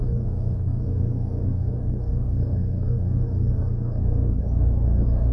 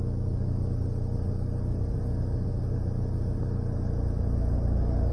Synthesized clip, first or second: first